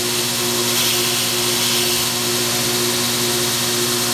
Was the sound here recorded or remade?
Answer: recorded